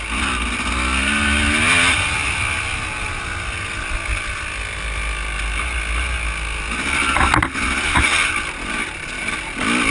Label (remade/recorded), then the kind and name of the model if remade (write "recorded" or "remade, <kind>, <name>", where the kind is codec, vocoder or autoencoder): recorded